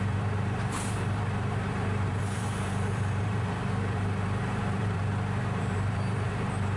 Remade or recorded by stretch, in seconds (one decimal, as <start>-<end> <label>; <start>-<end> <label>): 0.0-5.0 remade; 5.0-5.6 recorded; 5.6-6.8 remade